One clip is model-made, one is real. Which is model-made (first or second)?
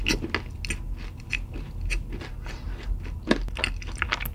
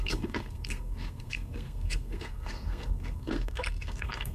second